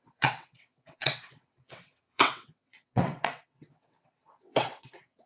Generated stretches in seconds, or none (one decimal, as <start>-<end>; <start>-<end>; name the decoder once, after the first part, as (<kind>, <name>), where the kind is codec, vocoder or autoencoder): 0.0-5.3 (vocoder, WaveNeXt)